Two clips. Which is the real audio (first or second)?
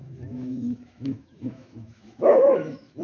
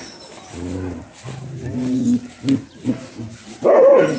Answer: second